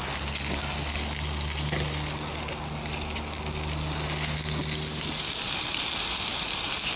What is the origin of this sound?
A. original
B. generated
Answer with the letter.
A